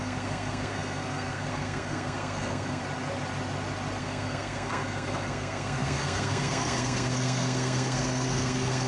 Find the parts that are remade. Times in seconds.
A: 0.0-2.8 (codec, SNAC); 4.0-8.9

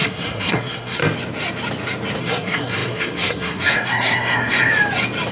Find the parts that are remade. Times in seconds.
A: 0.0-1.0 (codec, SNAC); 2.2-4.7

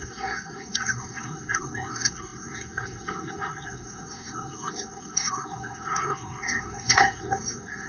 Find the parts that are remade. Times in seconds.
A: 0.0-7.9 (codec, SNAC)

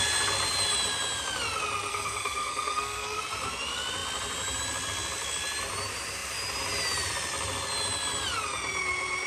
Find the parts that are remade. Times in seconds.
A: 1.9-3.2 (codec, SNAC)

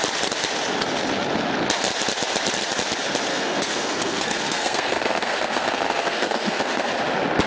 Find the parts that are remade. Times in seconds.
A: 3.3-6.9 (codec, SNAC)